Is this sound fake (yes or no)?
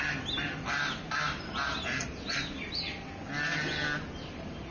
no